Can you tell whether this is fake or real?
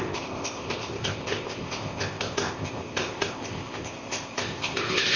fake